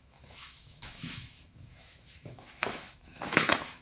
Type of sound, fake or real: fake